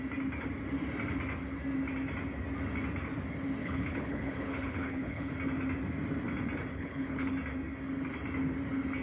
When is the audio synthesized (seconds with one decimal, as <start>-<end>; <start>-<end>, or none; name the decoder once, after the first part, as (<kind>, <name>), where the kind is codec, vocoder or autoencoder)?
3.6-5.3 (codec, HILCodec); 6.7-7.3